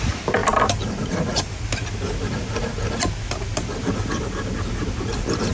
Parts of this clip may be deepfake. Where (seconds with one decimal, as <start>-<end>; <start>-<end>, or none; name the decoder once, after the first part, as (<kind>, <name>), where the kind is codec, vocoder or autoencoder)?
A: 0.0-1.8 (vocoder, BigVGAN v2); 5.1-5.5